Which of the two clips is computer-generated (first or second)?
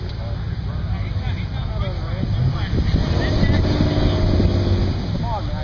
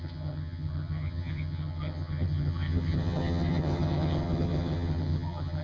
second